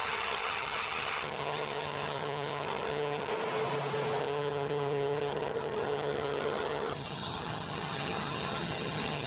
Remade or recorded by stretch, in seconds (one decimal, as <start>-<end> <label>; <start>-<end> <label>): 0.0-3.3 remade; 3.3-4.2 recorded; 4.2-9.3 remade